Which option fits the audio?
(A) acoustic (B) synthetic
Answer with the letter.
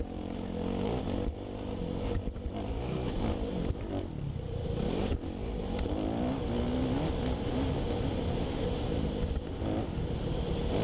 A